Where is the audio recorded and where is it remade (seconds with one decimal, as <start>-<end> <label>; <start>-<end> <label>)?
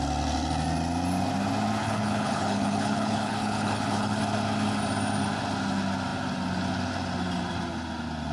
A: 0.0-1.8 recorded; 1.8-4.2 remade; 4.2-8.3 recorded